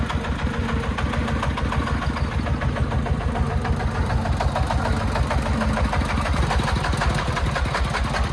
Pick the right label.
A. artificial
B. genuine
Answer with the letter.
B